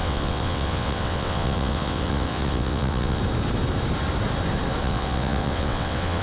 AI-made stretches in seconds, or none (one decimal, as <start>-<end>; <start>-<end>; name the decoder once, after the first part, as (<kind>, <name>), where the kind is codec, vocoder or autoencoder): 0.0-3.2 (vocoder, WaveNeXt); 4.8-6.2